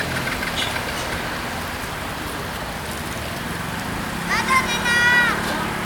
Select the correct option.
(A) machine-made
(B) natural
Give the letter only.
B